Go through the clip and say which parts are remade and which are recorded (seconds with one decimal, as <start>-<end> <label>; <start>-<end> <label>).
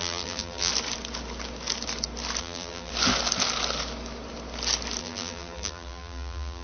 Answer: 0.0-0.7 remade; 0.7-2.4 recorded; 2.4-2.9 remade; 2.9-5.0 recorded; 5.0-6.6 remade